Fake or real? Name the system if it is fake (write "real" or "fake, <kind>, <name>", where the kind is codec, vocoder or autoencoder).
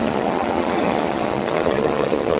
fake, vocoder, Vocos